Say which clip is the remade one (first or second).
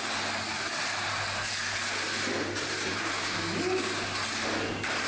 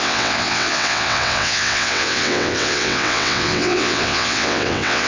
second